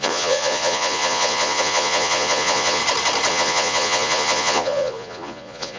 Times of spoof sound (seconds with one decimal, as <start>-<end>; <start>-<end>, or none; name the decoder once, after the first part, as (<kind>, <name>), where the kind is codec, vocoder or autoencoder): 0.0-2.8 (vocoder, Vocos); 3.3-5.8